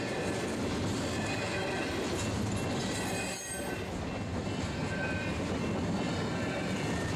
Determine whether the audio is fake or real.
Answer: real